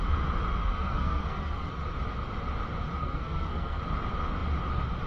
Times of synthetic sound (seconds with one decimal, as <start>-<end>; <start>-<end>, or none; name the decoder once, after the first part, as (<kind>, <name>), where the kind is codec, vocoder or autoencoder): 0.6-1.7 (codec, SNAC); 3.0-3.8